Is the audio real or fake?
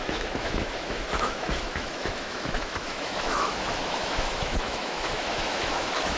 fake